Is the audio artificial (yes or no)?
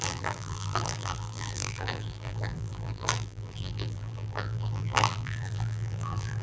yes